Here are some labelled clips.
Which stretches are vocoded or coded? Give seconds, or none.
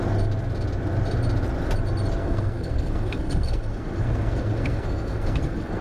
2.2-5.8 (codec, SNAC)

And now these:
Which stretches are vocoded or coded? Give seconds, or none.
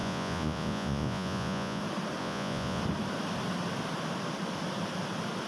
0.0-1.8 (vocoder, Vocos); 2.2-2.8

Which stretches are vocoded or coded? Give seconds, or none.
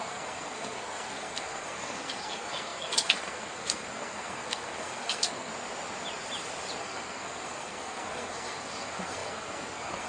0.0-5.5 (codec, SNAC); 6.8-10.1